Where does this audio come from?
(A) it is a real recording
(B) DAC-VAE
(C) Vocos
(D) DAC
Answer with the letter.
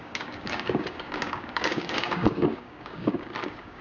D